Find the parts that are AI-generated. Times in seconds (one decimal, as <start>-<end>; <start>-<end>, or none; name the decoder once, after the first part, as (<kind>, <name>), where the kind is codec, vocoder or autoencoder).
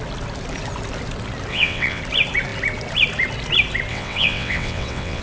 1.5-2.0 (vocoder, WaveNeXt); 3.9-5.2